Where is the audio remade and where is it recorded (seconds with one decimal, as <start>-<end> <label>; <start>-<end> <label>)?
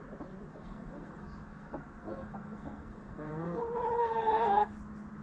0.0-0.5 recorded; 0.5-3.6 remade; 3.6-4.0 recorded; 4.0-4.7 remade; 4.7-5.2 recorded